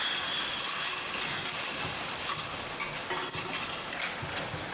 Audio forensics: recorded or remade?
recorded